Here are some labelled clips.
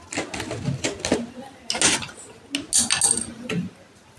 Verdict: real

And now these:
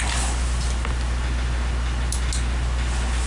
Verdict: real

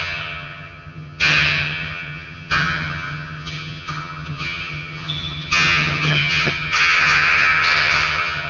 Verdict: fake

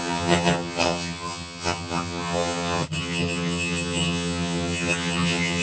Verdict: fake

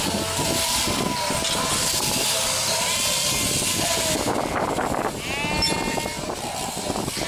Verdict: real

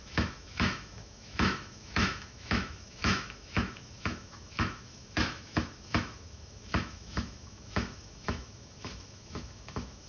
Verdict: fake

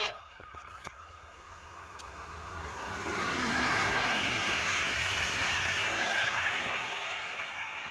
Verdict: fake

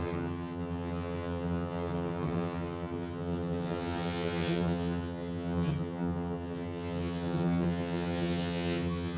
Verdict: fake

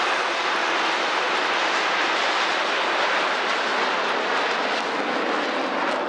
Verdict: real